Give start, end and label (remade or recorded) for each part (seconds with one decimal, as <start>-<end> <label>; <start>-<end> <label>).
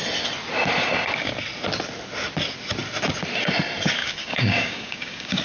0.0-4.0 recorded; 4.0-5.4 remade